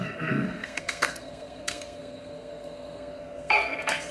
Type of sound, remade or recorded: remade